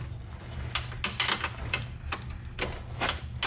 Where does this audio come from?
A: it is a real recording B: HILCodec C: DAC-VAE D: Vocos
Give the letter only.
A